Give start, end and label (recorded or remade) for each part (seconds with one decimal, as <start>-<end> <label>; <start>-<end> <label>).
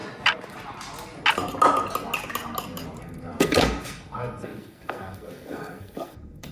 0.0-3.0 recorded; 3.0-6.5 remade